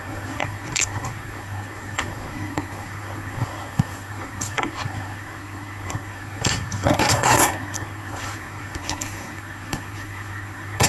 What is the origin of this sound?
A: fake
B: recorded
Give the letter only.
A